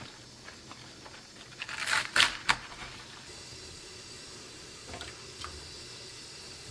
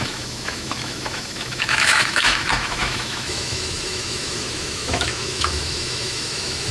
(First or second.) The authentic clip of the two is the first